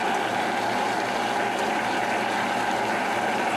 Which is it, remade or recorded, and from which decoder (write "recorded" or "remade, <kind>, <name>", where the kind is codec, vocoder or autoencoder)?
recorded